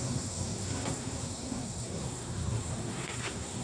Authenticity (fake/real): fake